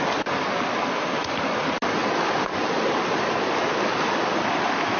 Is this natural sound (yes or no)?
yes